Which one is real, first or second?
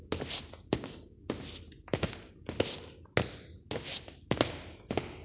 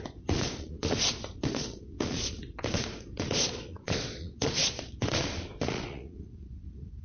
first